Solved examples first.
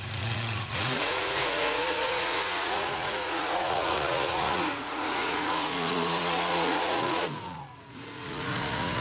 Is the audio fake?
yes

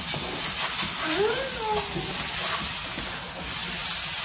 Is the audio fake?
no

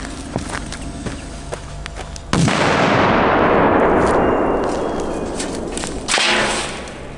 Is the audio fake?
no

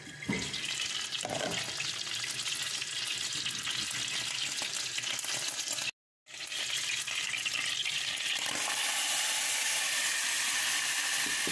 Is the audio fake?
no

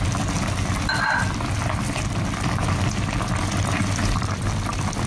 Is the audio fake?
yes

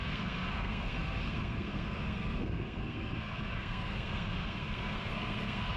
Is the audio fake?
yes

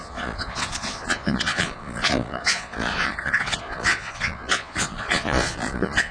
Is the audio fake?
yes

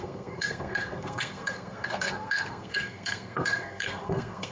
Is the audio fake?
yes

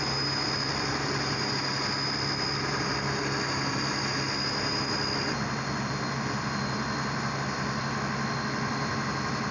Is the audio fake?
no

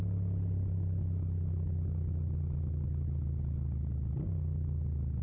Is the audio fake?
no